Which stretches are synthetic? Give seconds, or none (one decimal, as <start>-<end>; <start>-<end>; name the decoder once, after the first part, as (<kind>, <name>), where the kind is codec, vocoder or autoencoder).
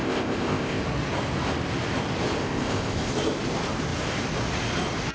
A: 0.0-0.8 (codec, ZipCodec); 2.4-3.1